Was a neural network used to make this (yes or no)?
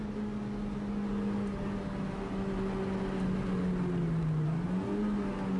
no